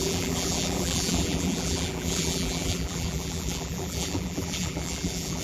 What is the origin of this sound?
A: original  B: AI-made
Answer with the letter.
B